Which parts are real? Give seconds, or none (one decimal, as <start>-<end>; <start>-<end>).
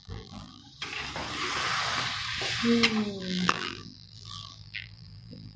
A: 0.6-3.2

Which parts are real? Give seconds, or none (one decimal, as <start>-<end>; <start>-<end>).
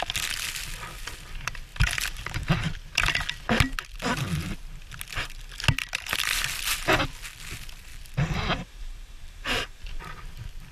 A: 0.0-1.7; 2.5-5.8; 6.6-7.9; 10.0-10.7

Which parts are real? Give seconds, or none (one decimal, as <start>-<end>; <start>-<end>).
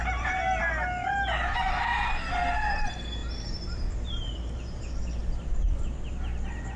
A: 0.0-3.2; 4.8-6.8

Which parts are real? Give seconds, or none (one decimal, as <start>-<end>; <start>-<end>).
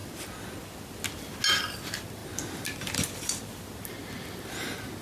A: 0.0-5.0